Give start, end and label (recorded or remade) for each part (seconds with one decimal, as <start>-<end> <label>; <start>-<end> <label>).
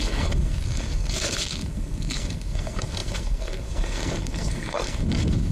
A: 0.0-5.5 remade